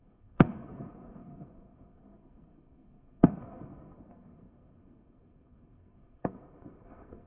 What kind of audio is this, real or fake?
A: fake